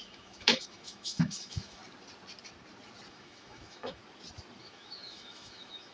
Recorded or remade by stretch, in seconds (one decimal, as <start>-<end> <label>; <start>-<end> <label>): 0.0-1.8 remade; 1.8-3.1 recorded; 3.1-4.0 remade; 4.0-4.6 recorded; 4.6-5.9 remade